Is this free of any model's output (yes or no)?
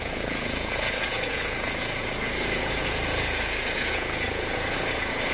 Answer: no